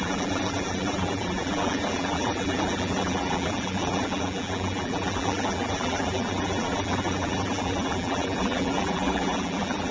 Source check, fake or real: fake